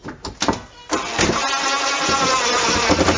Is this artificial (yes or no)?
no